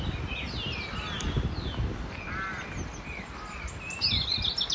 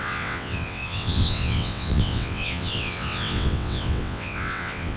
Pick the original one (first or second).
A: first